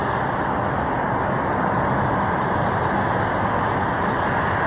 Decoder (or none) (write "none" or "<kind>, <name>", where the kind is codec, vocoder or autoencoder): none